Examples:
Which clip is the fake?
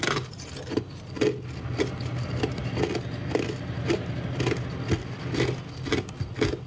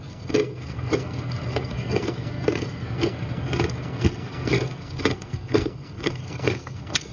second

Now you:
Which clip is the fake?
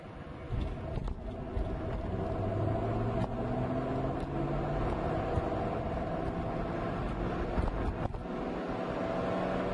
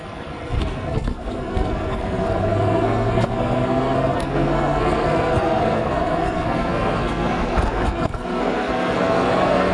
second